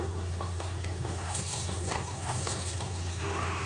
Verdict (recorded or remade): remade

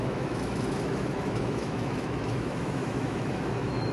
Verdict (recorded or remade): remade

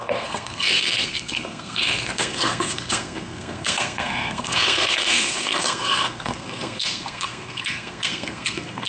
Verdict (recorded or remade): remade